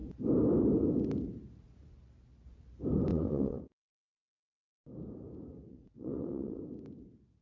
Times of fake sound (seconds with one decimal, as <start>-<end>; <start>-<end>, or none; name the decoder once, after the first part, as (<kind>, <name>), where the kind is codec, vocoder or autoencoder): 3.1-3.6 (vocoder, WaveNeXt); 5.7-6.6